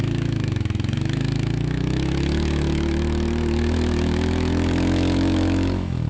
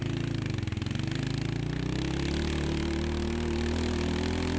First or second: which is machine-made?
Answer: first